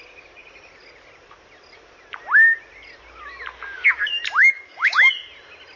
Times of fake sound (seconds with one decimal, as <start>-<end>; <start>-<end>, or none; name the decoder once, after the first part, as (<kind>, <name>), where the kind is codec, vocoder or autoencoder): 4.4-5.1 (codec, DAC)